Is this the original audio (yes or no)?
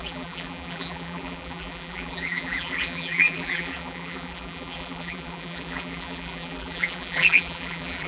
no